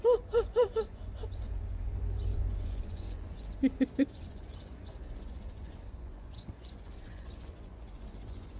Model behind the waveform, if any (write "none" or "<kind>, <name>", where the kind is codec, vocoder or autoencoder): vocoder, Vocos